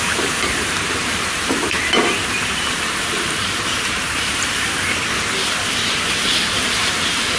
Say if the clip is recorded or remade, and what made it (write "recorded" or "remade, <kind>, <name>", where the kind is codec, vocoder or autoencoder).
remade, vocoder, BigVGAN v2